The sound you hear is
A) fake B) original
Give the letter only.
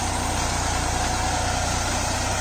B